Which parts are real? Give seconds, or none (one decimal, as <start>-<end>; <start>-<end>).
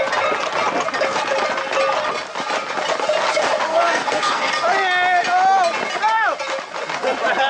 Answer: 0.0-3.7; 4.5-7.5